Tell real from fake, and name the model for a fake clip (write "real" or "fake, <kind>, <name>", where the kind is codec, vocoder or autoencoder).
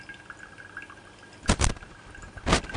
real